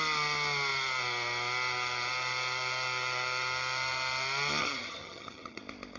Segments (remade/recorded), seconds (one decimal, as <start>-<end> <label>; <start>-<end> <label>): 0.0-4.6 recorded; 4.6-5.6 remade; 5.6-6.0 recorded